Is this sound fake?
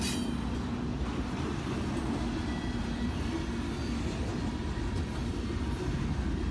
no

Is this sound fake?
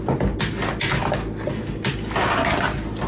no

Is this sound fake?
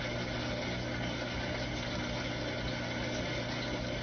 no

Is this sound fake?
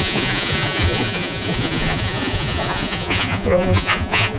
yes